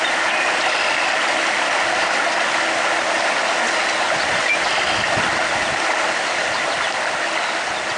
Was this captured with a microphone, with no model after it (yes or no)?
yes